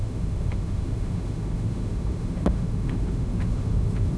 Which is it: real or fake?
fake